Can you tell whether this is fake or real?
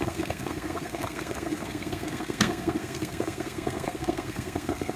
fake